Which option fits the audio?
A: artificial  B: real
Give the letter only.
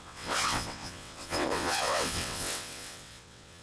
A